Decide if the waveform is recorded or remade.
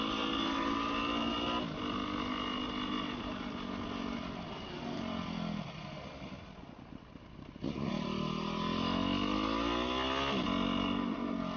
recorded